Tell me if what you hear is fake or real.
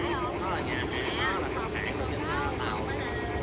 real